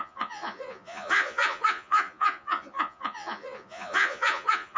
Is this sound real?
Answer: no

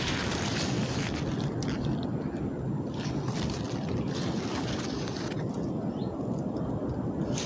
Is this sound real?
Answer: yes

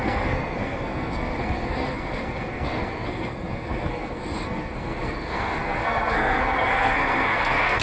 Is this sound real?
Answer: no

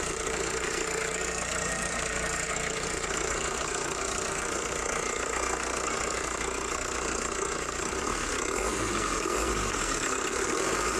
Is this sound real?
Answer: no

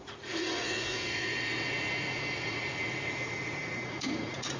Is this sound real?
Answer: no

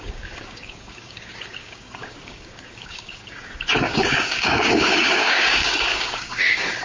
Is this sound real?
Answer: no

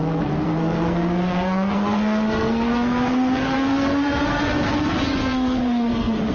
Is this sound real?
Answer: no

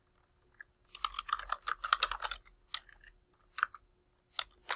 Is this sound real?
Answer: yes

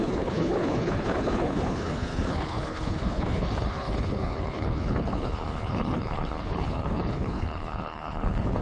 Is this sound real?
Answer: no